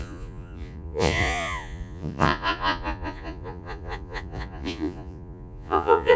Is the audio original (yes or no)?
no